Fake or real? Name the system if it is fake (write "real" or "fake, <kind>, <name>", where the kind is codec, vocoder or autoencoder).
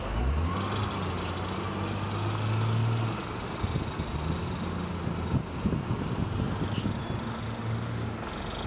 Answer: real